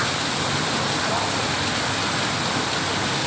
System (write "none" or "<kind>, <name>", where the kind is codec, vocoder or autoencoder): none